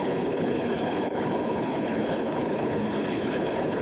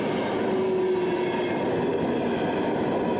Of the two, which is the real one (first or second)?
second